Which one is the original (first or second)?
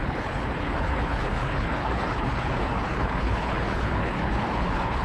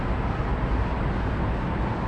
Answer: second